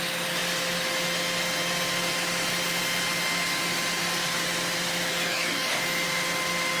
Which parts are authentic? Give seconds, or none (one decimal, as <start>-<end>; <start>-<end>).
0.0-5.1; 5.8-6.8